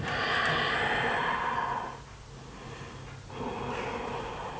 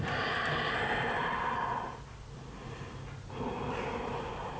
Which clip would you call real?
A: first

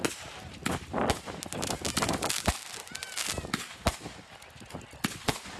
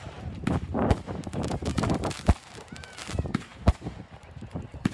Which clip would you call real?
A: first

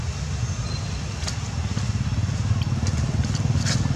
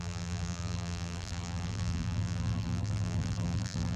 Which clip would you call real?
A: first